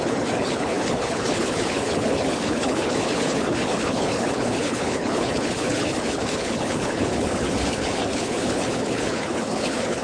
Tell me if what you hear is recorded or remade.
remade